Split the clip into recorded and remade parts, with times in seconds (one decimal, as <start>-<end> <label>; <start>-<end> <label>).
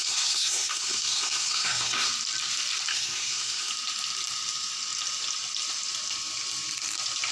0.0-2.1 remade; 2.1-2.9 recorded; 2.9-3.7 remade; 3.7-7.3 recorded